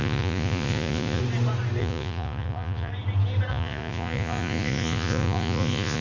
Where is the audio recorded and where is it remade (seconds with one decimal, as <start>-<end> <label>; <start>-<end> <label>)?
0.0-1.2 remade; 1.2-1.8 recorded; 1.8-2.9 remade; 2.9-3.5 recorded; 3.5-6.0 remade